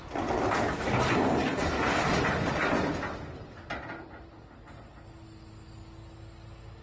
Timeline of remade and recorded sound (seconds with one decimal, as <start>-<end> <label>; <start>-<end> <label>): 0.0-1.4 recorded; 1.4-2.5 remade; 2.5-6.8 recorded